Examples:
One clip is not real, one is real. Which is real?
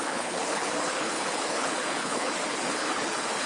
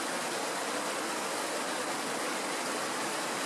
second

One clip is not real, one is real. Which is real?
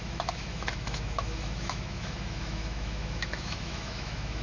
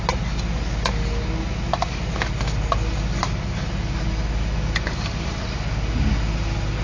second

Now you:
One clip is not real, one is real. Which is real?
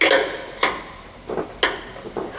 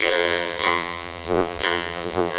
first